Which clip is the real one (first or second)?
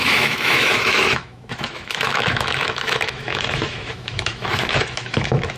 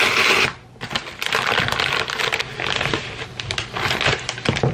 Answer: second